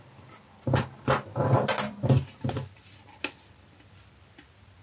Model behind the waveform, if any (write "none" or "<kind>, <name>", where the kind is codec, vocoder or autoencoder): none